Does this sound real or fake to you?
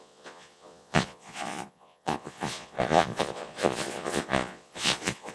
fake